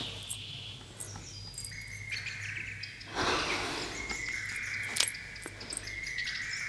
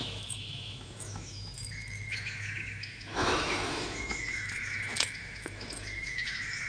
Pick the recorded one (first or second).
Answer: first